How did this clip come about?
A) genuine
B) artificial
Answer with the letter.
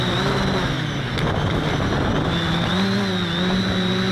A